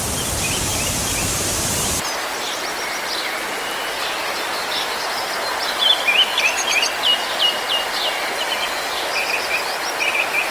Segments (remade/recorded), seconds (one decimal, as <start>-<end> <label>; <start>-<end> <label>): 0.0-10.5 recorded